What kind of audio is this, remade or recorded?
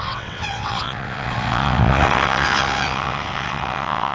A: remade